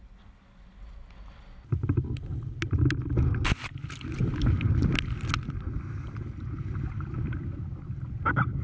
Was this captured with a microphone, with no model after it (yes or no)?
yes